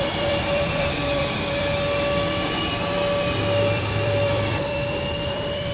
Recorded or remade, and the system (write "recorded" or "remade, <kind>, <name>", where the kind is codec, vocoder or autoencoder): remade, vocoder, BigVGAN v2